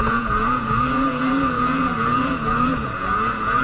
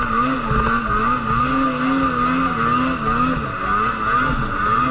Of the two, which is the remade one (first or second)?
first